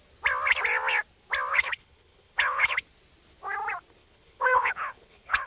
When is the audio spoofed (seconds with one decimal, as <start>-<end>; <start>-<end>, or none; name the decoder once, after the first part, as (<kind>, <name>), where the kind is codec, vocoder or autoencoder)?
1.5-2.8 (codec, HILCodec); 4.0-5.5